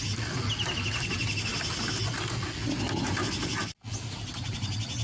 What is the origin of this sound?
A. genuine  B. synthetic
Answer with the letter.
A